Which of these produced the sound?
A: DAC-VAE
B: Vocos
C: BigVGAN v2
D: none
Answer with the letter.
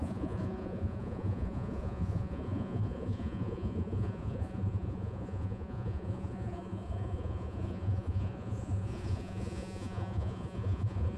B